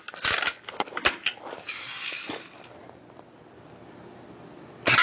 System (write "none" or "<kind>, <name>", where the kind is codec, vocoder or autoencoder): none